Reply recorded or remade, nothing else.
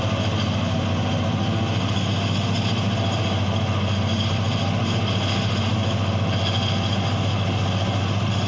recorded